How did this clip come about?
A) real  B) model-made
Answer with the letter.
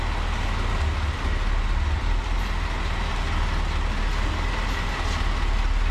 A